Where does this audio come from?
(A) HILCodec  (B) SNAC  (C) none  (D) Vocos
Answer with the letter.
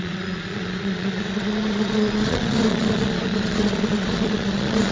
D